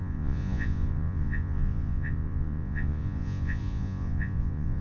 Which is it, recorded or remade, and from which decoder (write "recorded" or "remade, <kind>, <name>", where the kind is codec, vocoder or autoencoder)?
remade, vocoder, Vocos